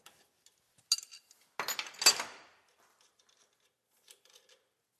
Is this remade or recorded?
recorded